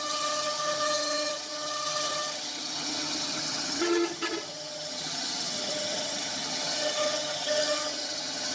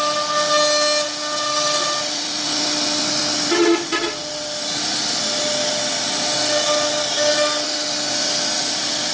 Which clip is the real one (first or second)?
second